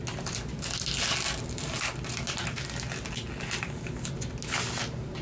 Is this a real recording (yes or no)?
yes